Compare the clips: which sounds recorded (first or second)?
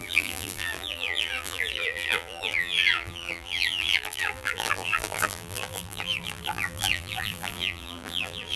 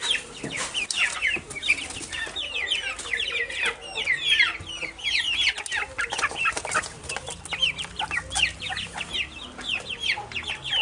second